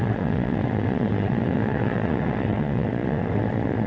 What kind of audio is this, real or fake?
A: fake